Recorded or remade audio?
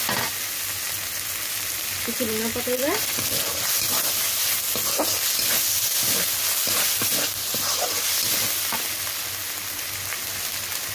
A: recorded